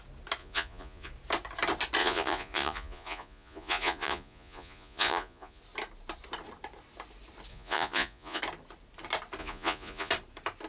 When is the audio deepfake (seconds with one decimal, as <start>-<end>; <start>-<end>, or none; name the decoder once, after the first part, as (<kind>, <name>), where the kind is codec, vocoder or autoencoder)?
0.4-1.1 (vocoder, Vocos); 2.0-5.6; 7.5-8.4; 9.4-10.1